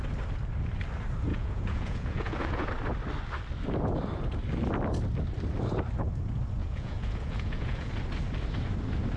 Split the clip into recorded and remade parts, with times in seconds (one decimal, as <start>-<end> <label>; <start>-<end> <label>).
0.0-1.3 recorded; 1.3-2.7 remade; 2.7-6.6 recorded; 6.6-7.9 remade; 7.9-9.2 recorded